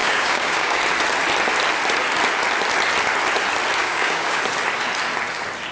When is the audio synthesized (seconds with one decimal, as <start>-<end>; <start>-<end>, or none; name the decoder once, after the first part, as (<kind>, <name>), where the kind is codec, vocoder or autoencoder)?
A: 0.0-0.8 (codec, DAC); 3.8-4.4